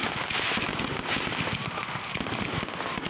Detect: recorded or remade recorded